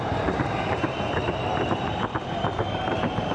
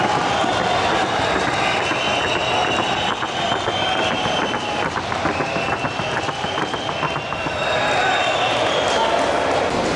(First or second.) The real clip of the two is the second